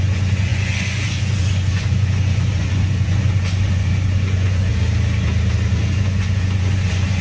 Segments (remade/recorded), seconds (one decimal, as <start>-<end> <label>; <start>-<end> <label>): 0.0-4.7 remade; 4.7-5.9 recorded; 5.9-7.2 remade